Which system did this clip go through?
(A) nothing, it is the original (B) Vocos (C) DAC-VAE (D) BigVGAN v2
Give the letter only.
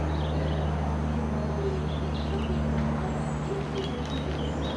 A